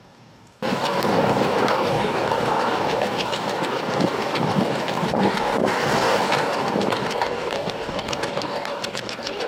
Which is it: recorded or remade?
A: remade